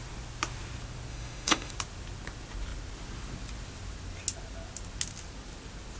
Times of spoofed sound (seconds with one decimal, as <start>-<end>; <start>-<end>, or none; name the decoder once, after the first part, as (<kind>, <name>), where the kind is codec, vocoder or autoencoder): 1.1-1.7 (autoencoder, DAC-VAE)

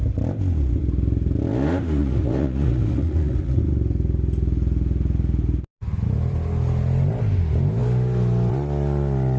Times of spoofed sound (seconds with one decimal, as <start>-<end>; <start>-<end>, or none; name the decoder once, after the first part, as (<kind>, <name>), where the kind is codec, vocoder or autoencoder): 2.0-3.6 (vocoder, Vocos)

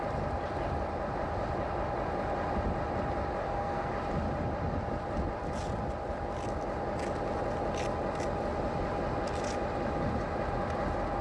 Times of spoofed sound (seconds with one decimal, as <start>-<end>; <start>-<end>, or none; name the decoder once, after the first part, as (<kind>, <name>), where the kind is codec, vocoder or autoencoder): 3.4-3.9 (codec, SNAC)

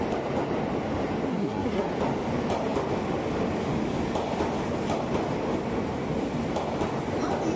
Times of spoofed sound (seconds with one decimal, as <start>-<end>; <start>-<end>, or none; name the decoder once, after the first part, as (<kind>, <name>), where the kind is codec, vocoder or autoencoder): 1.3-1.9 (codec, SNAC)

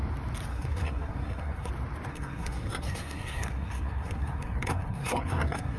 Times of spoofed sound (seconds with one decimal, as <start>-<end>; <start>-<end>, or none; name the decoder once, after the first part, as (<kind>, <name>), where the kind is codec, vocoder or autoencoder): 0.5-1.7 (codec, SNAC); 2.1-5.8

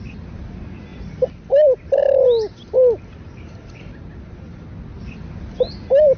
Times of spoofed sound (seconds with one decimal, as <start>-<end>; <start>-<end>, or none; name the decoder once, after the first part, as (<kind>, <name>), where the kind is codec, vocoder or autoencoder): none

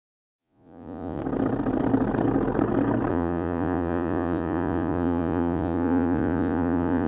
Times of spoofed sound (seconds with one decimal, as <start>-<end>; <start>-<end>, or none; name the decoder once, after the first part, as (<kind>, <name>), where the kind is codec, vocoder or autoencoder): 0.0-1.2 (vocoder, Vocos); 3.1-7.1